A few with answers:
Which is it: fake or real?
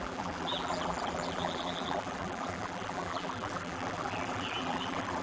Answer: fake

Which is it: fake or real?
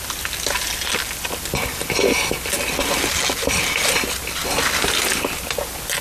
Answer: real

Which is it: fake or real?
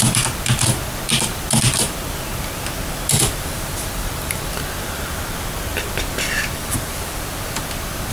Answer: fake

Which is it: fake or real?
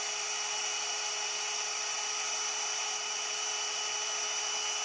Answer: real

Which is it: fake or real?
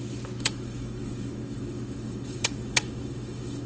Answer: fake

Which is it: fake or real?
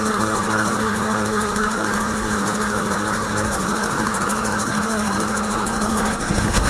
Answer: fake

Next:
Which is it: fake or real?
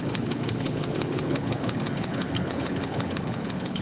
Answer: fake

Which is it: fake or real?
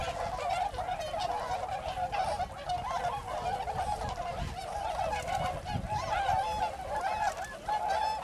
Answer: real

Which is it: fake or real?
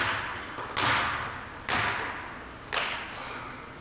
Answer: real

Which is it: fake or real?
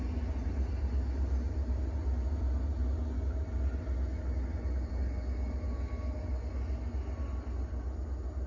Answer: real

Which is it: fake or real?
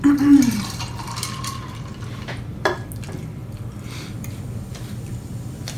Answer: fake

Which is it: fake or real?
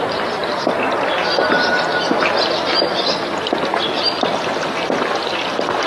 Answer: real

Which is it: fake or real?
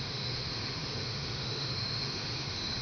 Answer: fake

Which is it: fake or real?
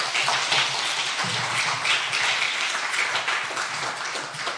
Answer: real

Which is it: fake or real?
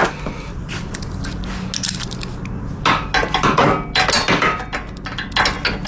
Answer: real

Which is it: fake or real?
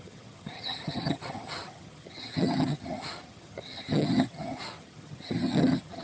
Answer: fake